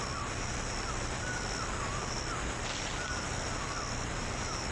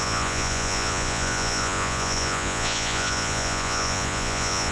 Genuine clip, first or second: first